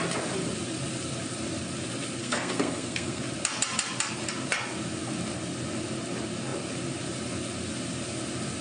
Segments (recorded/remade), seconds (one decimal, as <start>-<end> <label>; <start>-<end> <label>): 0.0-2.2 recorded; 2.2-3.2 remade; 3.2-8.6 recorded